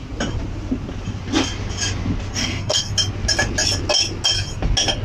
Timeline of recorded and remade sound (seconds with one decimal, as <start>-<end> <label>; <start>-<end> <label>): 0.0-2.4 recorded; 2.4-2.9 remade; 2.9-5.0 recorded